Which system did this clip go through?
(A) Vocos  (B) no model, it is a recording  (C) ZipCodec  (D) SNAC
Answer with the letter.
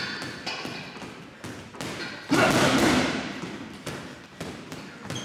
B